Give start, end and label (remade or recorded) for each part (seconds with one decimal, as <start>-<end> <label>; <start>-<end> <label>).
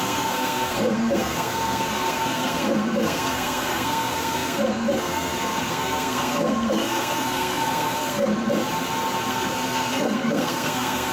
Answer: 0.0-8.3 remade; 8.3-9.3 recorded; 9.3-11.1 remade